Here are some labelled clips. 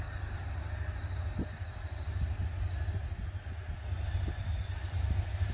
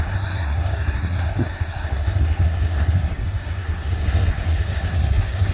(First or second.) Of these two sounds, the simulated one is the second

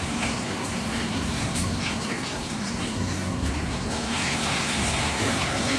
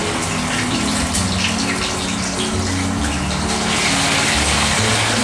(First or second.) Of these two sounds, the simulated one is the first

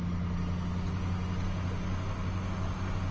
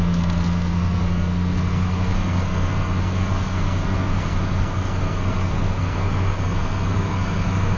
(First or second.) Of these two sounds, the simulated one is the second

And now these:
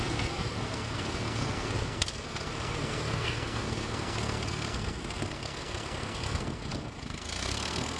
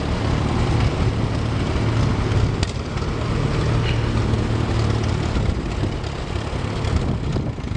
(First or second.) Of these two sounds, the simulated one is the first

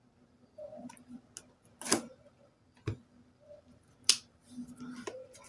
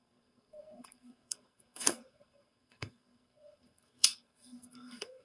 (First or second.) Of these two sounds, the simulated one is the second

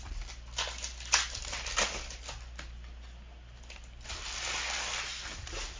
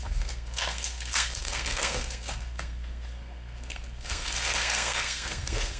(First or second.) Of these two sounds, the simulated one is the second